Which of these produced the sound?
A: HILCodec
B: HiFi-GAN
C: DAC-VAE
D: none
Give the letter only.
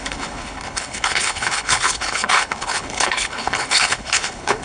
A